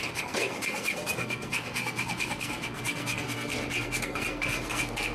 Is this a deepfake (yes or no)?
yes